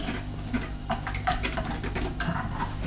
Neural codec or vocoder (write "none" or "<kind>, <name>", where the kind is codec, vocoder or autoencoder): none